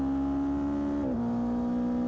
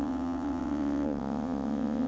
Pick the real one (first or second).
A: first